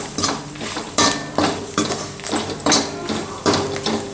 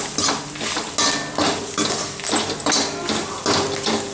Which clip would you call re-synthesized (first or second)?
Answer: first